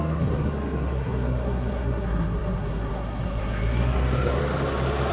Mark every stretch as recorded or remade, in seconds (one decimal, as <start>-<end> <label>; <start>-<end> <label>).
0.0-4.4 remade; 4.4-5.1 recorded